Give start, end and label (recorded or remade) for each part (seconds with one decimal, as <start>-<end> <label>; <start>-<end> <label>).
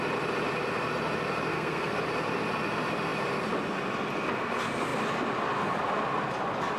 0.0-1.5 recorded; 1.5-2.0 remade; 2.0-6.8 recorded